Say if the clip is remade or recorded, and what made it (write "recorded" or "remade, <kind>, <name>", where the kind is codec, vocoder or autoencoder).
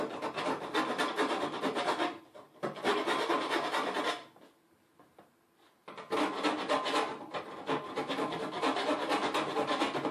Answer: recorded